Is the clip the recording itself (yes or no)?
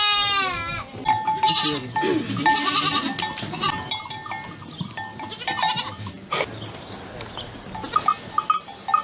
yes